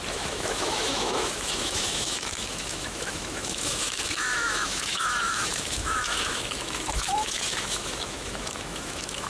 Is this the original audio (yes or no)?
no